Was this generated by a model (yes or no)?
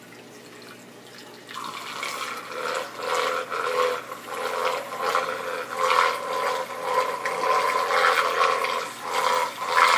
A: no